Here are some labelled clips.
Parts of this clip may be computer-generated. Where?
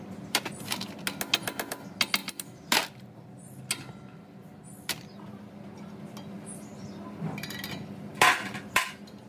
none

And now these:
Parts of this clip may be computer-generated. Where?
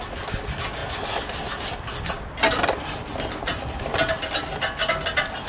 none